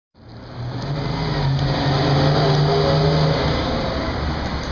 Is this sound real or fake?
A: real